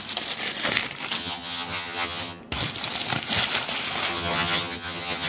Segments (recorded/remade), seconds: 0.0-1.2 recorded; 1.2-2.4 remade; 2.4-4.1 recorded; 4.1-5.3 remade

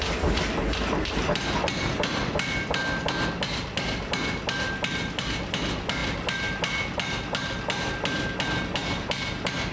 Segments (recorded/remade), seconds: 0.0-9.7 recorded

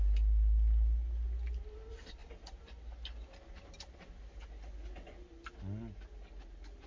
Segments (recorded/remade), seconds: 0.0-6.9 recorded

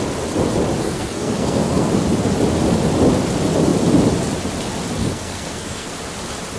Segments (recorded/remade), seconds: 0.0-0.8 recorded; 0.8-1.9 remade; 1.9-5.0 recorded; 5.0-5.9 remade; 5.9-6.6 recorded

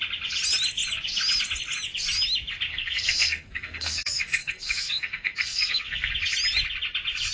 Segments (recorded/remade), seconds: 0.0-2.7 recorded; 2.7-6.1 remade; 6.1-7.3 recorded